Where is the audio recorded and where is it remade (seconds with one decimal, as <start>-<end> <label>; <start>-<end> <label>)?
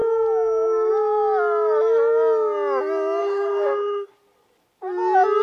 0.0-3.2 recorded; 3.2-4.1 remade; 4.1-5.4 recorded